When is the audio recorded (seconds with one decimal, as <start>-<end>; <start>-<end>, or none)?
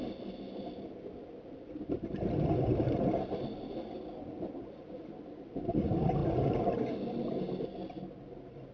0.0-8.7